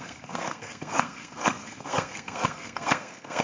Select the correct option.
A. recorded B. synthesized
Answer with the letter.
B